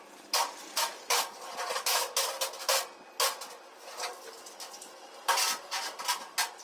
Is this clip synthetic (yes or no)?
no